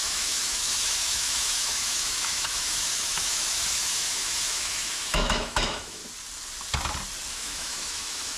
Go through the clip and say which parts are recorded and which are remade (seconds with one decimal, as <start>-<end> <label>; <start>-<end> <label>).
0.0-6.0 remade; 6.0-7.3 recorded; 7.3-8.4 remade